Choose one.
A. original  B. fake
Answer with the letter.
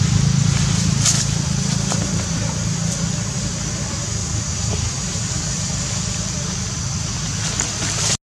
A